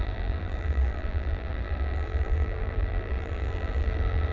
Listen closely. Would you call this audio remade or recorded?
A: remade